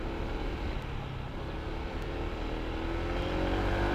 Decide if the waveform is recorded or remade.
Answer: recorded